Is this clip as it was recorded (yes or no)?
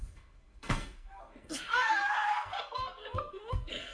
no